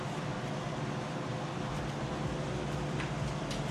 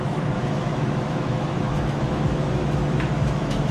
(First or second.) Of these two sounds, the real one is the first